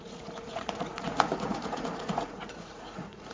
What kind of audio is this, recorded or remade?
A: remade